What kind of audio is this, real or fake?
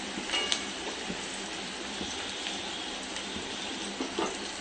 fake